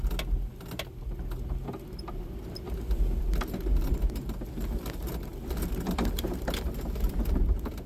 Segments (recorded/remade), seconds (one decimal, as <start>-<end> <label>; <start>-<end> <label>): 0.0-7.9 recorded